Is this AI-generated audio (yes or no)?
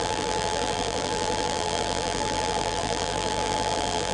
yes